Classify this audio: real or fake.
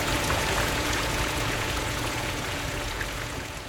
fake